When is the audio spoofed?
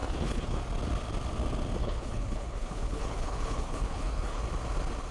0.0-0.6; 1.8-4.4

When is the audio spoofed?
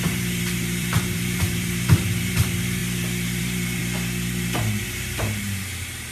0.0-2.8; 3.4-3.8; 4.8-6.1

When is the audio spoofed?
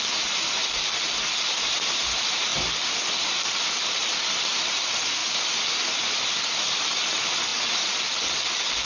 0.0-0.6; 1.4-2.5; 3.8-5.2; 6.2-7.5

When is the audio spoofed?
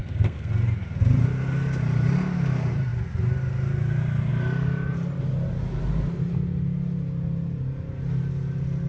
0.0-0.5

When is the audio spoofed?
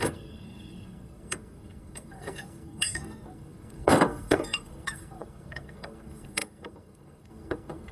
0.0-7.9